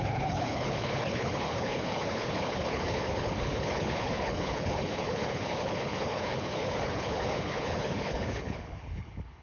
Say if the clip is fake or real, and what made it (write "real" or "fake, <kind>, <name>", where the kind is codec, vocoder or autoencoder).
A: fake, codec, HILCodec